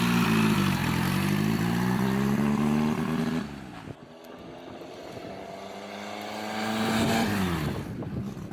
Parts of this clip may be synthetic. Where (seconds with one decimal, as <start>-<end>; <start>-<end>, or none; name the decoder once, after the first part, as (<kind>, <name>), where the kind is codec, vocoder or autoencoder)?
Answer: none